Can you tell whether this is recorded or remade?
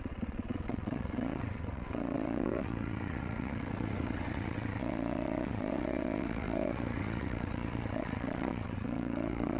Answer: remade